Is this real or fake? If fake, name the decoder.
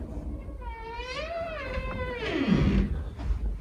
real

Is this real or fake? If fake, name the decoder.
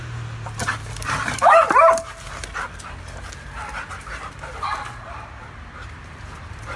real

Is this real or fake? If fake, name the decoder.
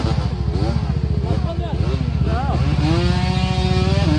real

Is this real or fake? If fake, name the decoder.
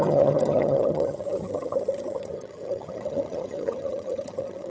fake, vocoder, HiFi-GAN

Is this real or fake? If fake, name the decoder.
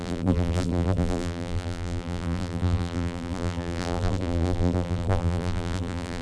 fake, vocoder, BigVGAN v2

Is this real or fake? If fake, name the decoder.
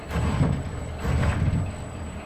real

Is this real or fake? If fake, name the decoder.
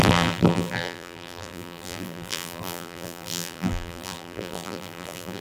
fake, vocoder, BigVGAN v2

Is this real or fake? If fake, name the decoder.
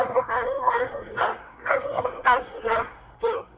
fake, codec, SNAC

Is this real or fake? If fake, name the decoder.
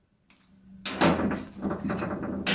real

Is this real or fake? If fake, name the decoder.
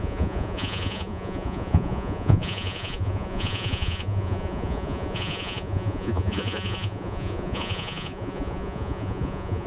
fake, vocoder, Vocos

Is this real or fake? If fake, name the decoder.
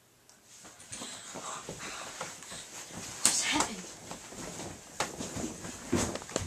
real